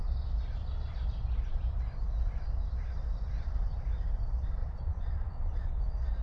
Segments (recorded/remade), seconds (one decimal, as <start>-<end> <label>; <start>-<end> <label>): 0.0-4.6 recorded; 4.6-5.7 remade; 5.7-6.2 recorded